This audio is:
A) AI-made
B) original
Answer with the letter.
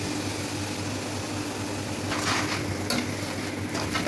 B